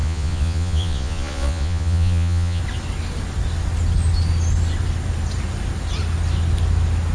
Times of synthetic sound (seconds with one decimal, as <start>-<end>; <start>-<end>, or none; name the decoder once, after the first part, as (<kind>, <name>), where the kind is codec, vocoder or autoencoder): 0.0-2.6 (vocoder, Vocos)

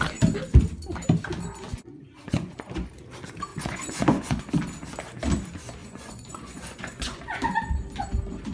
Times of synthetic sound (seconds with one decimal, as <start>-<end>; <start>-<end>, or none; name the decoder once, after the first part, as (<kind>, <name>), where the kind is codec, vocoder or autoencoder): 1.7-2.9 (vocoder, Vocos); 3.5-4.4; 5.8-7.4